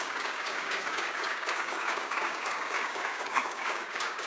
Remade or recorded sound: remade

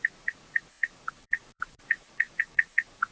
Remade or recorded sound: remade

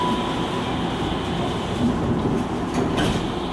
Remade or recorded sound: recorded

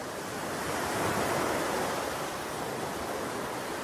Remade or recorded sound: recorded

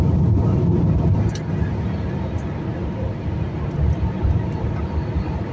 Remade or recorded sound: recorded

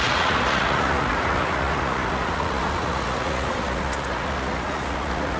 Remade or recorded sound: remade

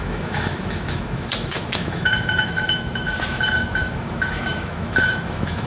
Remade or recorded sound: remade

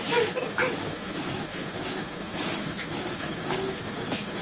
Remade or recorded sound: remade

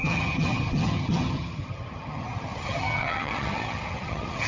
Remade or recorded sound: remade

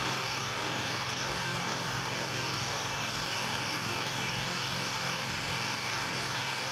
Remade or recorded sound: remade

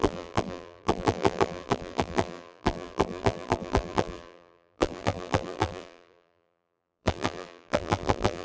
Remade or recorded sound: remade